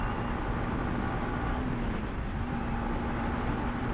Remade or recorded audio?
recorded